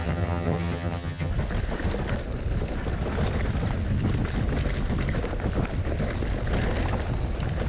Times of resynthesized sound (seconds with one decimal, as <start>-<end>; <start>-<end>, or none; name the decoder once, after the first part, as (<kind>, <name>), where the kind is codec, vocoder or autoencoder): 0.0-1.3 (vocoder, HiFi-GAN)